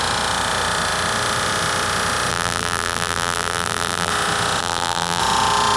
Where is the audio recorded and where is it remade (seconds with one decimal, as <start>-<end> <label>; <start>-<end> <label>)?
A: 0.0-2.3 recorded; 2.3-4.1 remade; 4.1-4.6 recorded; 4.6-5.2 remade; 5.2-5.8 recorded